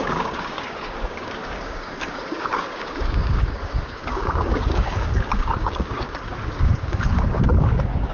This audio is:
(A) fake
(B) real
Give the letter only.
A